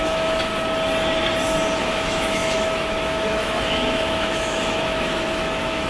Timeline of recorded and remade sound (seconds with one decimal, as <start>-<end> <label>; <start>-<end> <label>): 0.0-0.5 remade; 0.5-1.8 recorded; 1.8-5.9 remade